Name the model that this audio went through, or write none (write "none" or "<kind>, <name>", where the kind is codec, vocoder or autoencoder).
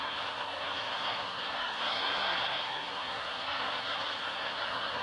codec, SNAC